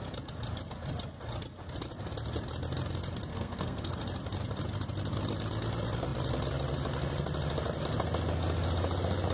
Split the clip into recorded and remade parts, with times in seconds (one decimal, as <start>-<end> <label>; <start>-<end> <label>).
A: 0.0-3.3 recorded; 3.3-4.0 remade; 4.0-9.3 recorded